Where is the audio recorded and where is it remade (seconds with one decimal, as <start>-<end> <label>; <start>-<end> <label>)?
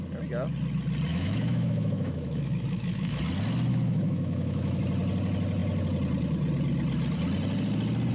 0.0-1.1 recorded; 1.1-3.2 remade; 3.2-3.7 recorded; 3.7-4.8 remade; 4.8-8.1 recorded